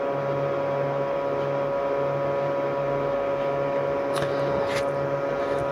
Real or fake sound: real